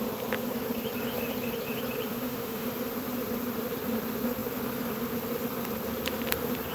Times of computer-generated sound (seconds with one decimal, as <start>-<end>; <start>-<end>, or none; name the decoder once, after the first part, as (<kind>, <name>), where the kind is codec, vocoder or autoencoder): 2.1-2.7 (autoencoder, DAC-VAE)